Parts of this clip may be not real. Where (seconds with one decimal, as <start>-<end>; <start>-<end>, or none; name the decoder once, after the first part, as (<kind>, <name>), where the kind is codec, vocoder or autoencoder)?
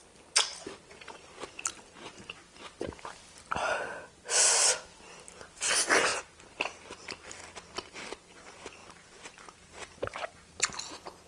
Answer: 6.1-7.4 (vocoder, BigVGAN v2); 8.8-10.3